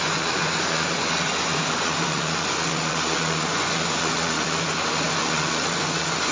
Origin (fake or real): fake